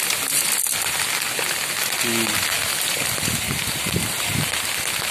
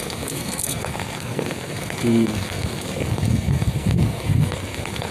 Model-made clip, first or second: second